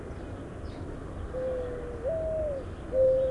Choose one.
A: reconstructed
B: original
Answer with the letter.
B